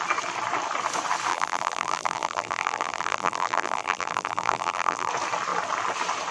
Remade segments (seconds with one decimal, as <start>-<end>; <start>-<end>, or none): 1.3-5.1